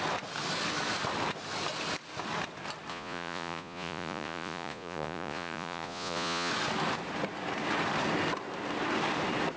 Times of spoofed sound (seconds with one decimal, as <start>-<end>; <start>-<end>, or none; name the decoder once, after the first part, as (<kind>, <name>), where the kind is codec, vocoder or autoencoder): 2.9-6.5 (vocoder, Vocos)